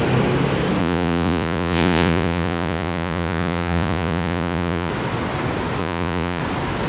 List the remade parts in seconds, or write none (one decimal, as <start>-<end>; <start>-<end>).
0.8-4.9; 5.8-6.4